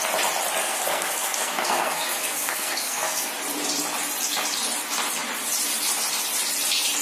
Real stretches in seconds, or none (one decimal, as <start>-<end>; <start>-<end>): 0.0-0.6; 3.3-7.0